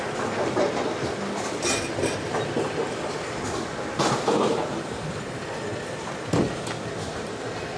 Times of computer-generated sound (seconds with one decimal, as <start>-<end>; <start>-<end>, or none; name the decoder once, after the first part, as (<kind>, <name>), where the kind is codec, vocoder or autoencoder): none